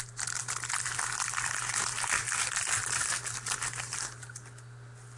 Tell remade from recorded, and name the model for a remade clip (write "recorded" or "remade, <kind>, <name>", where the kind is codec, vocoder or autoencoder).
recorded